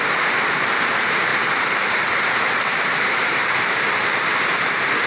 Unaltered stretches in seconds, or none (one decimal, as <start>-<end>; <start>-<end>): 1.3-2.6